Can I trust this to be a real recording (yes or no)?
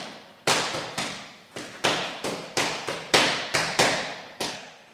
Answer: no